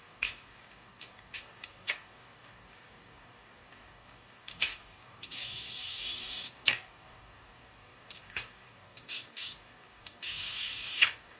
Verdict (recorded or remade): remade